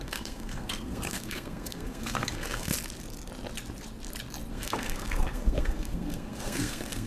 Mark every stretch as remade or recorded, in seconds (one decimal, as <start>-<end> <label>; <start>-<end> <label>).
0.0-2.7 remade; 2.7-4.5 recorded; 4.5-7.1 remade